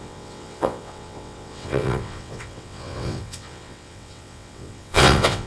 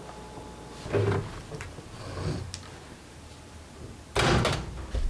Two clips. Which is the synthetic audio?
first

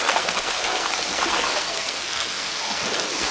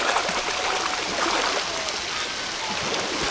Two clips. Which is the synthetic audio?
first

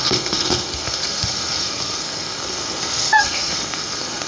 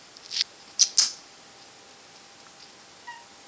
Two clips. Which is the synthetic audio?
first